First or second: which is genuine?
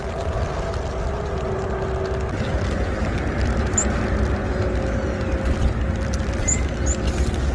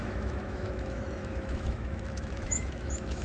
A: first